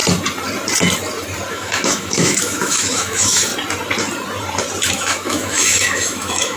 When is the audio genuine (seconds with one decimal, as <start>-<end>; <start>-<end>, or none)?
0.0-1.5; 3.5-4.9